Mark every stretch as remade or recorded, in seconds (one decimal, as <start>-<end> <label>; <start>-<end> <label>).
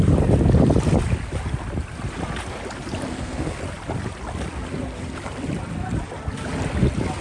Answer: 0.0-3.1 recorded; 3.1-3.6 remade; 3.6-7.2 recorded